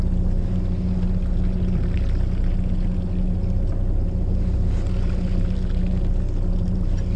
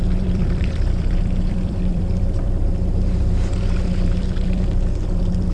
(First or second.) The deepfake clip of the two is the second